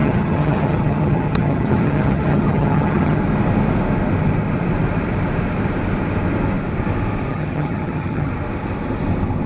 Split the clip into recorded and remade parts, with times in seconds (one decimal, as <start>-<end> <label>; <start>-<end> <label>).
0.0-3.2 remade; 3.2-7.3 recorded; 7.3-8.3 remade; 8.3-9.5 recorded